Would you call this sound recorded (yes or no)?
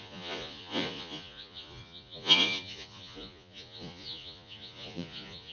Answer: no